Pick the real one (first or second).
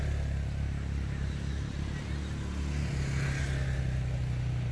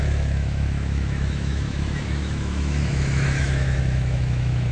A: first